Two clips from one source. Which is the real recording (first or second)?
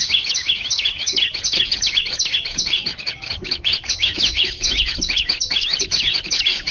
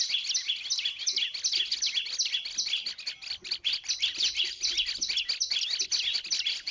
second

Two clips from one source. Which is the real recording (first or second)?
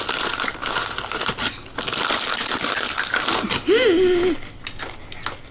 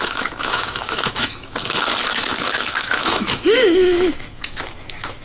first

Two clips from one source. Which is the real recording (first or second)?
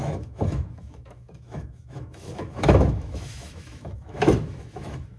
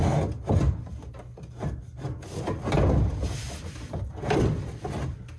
second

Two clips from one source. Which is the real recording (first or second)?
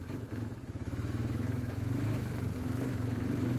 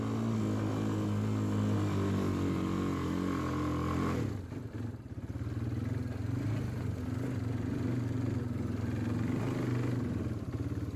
second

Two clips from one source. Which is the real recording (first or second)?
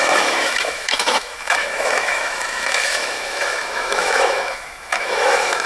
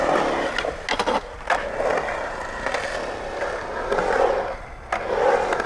second